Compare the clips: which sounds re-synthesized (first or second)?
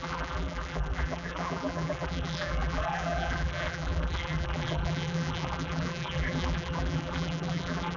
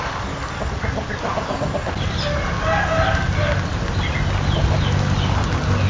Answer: first